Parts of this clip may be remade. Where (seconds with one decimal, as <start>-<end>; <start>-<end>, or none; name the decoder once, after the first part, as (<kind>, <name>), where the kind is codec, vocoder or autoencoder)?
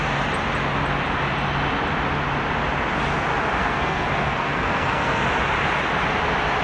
3.6-5.3 (codec, SNAC)